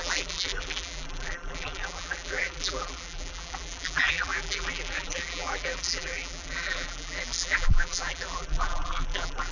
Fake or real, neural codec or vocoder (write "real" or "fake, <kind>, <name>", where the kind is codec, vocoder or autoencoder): fake, vocoder, BigVGAN v2